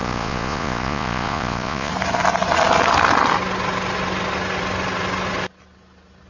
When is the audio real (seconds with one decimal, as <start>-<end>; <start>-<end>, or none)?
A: 1.9-6.3